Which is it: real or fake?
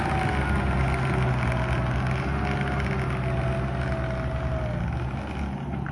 real